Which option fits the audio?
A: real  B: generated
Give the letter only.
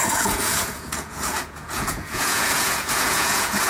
B